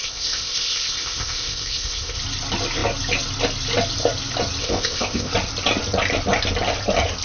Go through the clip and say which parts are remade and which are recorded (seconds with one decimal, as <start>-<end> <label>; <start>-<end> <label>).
0.0-2.2 remade; 2.2-4.6 recorded; 4.6-5.3 remade; 5.3-7.2 recorded